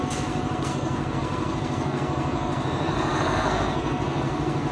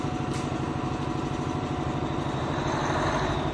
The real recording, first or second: second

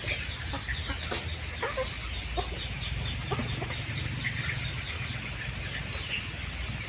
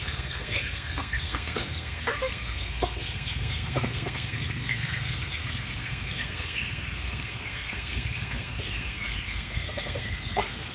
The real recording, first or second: first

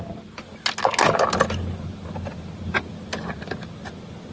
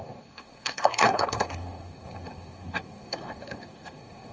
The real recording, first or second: first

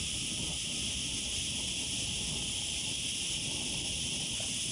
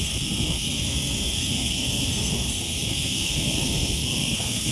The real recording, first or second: first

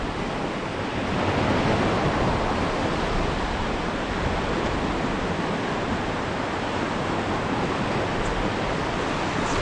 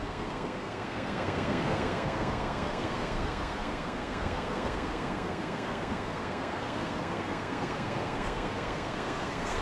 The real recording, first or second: first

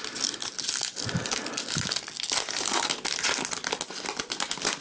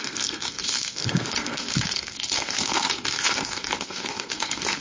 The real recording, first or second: first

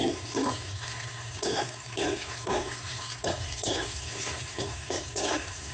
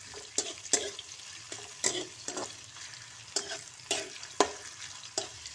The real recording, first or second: second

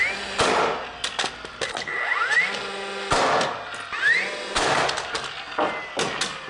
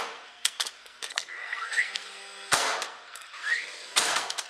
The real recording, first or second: first